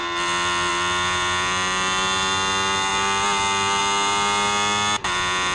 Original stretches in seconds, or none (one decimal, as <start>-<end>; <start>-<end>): 0.0-5.5